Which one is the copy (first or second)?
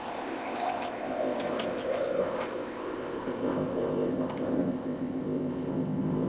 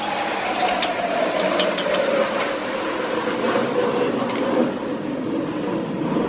first